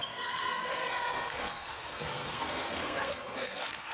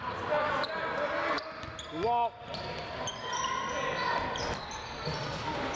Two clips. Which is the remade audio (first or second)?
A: first